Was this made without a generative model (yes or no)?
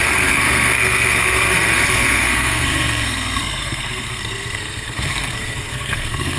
no